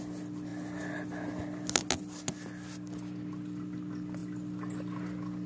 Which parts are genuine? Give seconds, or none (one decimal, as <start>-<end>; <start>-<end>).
0.0-5.5